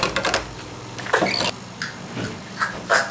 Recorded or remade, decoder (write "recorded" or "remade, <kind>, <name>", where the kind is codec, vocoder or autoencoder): recorded